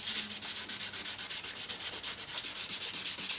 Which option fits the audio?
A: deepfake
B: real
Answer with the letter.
B